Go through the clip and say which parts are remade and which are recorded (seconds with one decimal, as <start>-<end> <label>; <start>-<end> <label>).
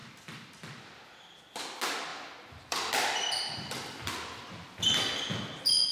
0.0-1.4 remade; 1.4-2.1 recorded; 2.1-4.5 remade; 4.5-5.9 recorded